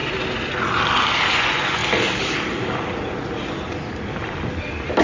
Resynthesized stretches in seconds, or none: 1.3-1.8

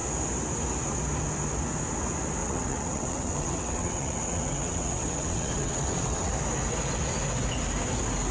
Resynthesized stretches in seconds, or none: 2.4-6.3

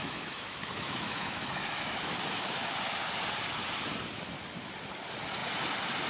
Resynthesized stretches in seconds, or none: 0.0-2.7

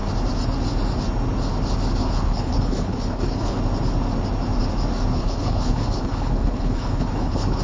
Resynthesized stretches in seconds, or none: 2.0-3.6; 5.1-7.6

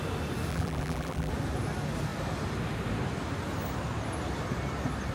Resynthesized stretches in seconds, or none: 0.5-1.3

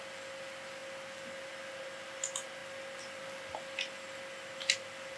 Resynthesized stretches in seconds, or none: none